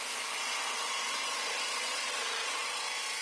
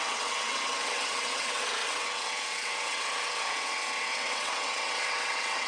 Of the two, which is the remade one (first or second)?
second